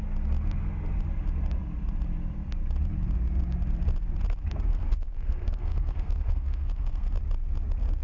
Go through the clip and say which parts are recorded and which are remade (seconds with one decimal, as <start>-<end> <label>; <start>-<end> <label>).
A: 0.0-4.7 recorded; 4.7-7.1 remade; 7.1-8.0 recorded